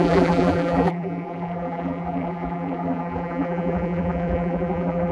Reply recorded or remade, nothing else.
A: remade